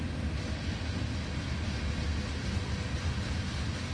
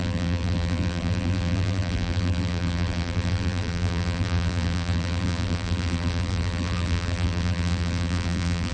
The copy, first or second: second